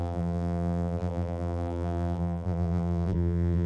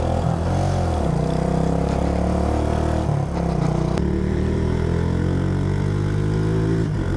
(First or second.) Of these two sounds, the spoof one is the first